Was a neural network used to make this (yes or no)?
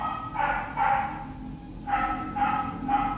no